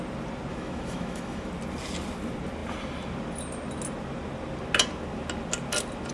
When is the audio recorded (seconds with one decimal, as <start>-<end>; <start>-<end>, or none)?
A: 0.0-0.5; 1.5-6.1